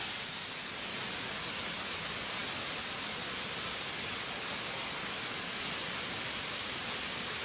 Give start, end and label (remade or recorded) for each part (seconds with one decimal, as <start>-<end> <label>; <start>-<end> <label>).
0.0-7.4 recorded